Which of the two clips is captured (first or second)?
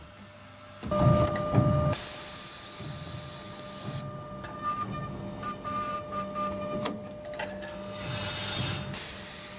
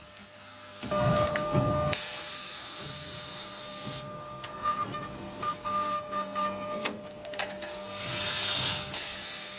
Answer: first